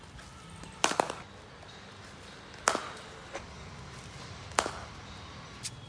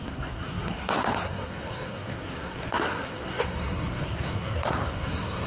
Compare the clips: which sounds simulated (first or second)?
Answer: second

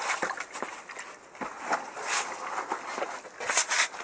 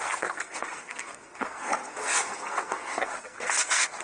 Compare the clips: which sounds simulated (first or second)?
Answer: second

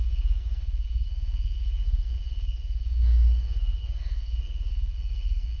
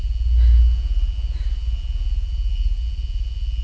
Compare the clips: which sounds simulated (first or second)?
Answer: first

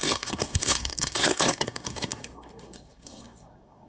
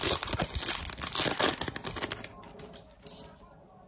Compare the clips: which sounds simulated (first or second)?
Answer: first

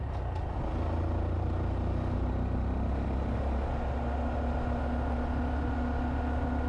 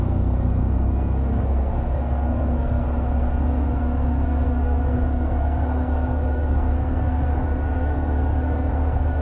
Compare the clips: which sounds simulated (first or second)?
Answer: second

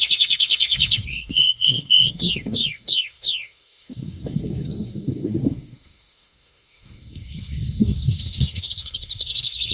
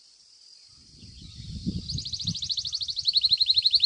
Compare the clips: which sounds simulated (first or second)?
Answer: first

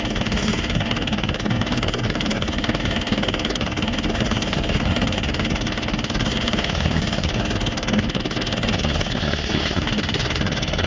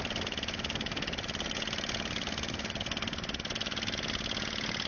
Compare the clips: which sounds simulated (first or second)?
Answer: first